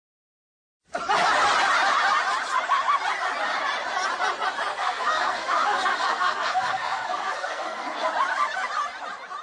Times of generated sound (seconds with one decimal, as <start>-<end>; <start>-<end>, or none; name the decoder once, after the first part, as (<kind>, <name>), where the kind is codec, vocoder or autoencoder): 4.7-8.1 (codec, SNAC)